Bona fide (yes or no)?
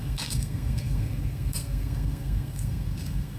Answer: no